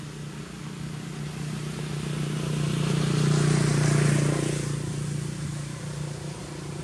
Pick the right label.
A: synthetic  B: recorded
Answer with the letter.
B